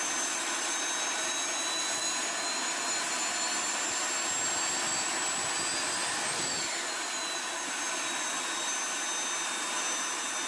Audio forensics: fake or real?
real